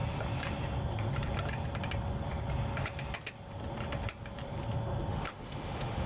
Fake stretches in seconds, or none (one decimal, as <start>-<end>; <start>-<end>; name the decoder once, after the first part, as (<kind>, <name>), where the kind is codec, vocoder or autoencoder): 5.1-6.1 (autoencoder, DAC-VAE)